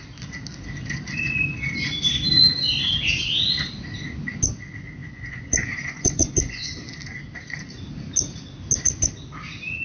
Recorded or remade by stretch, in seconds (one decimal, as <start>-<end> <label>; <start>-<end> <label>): 0.0-5.0 recorded; 5.0-6.7 remade; 6.7-9.8 recorded